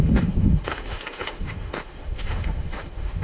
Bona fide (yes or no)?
no